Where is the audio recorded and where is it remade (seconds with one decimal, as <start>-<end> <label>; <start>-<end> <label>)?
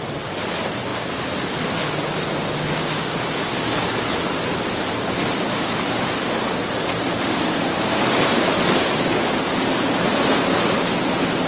0.0-11.5 recorded